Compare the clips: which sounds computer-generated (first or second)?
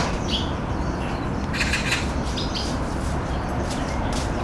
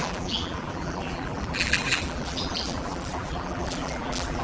second